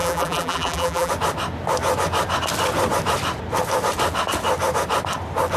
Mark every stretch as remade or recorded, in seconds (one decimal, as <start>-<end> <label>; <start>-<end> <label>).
0.0-1.1 remade; 1.1-5.6 recorded